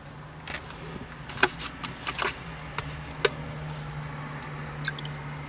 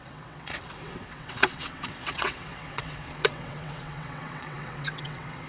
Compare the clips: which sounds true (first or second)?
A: first